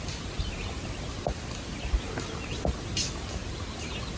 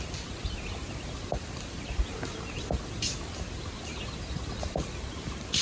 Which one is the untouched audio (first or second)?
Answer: first